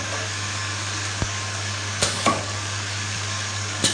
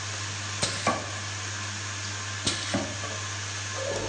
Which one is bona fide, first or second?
second